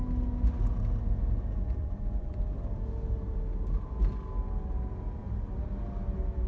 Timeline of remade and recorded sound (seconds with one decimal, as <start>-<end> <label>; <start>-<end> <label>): 0.0-1.8 recorded; 1.8-2.4 remade; 2.4-6.5 recorded